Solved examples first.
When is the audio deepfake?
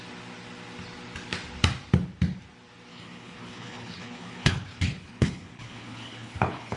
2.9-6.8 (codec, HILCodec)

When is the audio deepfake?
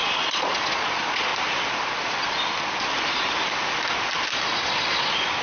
0.0-1.3 (vocoder, Vocos); 4.5-5.4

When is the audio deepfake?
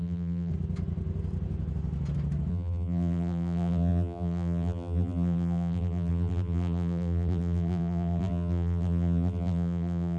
0.0-0.5 (vocoder, BigVGAN v2); 2.5-10.2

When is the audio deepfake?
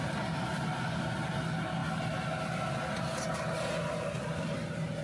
none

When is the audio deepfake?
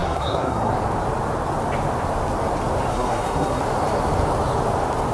0.0-0.7 (codec, SNAC); 2.9-3.6